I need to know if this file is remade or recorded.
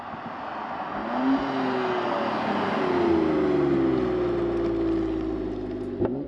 recorded